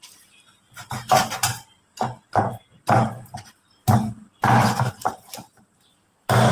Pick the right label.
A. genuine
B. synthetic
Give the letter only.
A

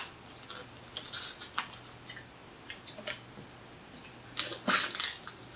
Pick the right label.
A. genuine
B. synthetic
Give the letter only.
A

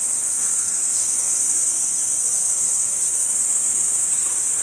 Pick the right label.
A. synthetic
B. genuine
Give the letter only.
A